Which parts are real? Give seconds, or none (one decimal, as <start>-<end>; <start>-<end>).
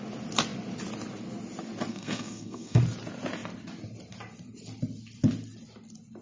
0.0-1.9; 2.8-6.2